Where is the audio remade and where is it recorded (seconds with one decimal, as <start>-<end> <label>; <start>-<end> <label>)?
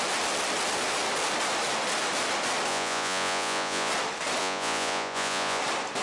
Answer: 0.0-2.7 recorded; 2.7-3.9 remade; 3.9-4.4 recorded; 4.4-5.6 remade; 5.6-6.0 recorded